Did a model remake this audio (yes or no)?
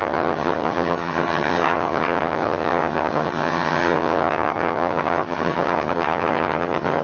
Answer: yes